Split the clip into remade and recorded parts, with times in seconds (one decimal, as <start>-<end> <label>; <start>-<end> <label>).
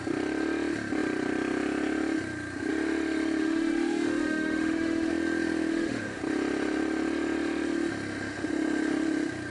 0.0-3.4 recorded; 3.4-5.1 remade; 5.1-5.7 recorded; 5.7-6.2 remade; 6.2-9.5 recorded